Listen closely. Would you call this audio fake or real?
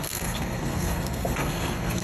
fake